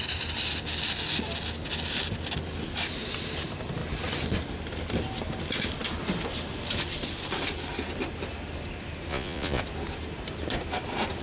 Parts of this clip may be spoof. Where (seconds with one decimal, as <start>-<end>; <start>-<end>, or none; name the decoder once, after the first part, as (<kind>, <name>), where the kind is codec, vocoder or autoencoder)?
9.1-9.6 (vocoder, Vocos)